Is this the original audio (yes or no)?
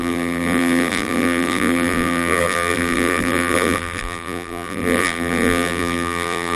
no